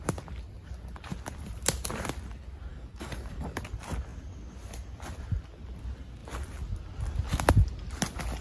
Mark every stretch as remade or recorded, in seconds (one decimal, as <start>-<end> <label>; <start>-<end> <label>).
0.0-2.7 recorded; 2.7-3.6 remade; 3.6-8.4 recorded